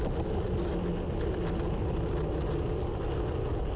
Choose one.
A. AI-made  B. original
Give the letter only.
B